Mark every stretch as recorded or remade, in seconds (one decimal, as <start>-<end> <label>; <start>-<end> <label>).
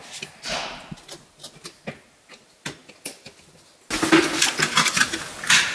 0.0-5.7 recorded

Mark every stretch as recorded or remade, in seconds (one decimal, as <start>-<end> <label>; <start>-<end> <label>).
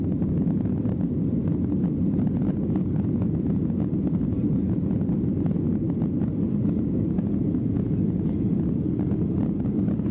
0.0-10.1 recorded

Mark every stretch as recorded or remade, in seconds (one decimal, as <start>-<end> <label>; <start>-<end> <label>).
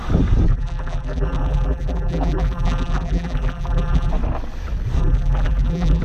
0.0-0.5 recorded; 0.5-4.1 remade; 4.1-5.0 recorded; 5.0-6.0 remade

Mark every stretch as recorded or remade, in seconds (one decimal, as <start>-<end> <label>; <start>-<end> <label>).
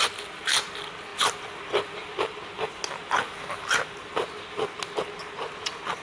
0.0-6.0 recorded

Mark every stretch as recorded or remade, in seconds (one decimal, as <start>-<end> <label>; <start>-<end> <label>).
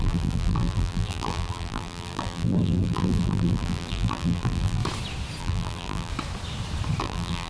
0.0-4.8 remade; 4.8-5.4 recorded; 5.4-6.1 remade; 6.1-7.0 recorded; 7.0-7.5 remade